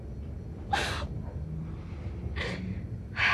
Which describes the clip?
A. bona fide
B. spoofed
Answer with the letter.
A